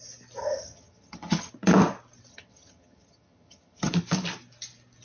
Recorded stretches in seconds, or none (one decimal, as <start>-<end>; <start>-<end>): 0.0-0.4; 1.5-2.3; 3.9-5.0